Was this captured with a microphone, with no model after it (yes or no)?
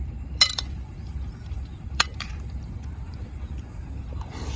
no